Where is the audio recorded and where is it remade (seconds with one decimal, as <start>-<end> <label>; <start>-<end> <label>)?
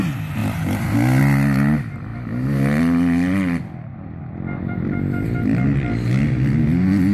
0.0-0.4 recorded; 0.4-1.2 remade; 1.2-7.1 recorded